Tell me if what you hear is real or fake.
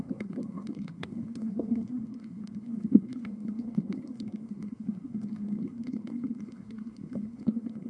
fake